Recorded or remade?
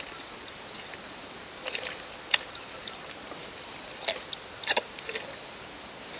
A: recorded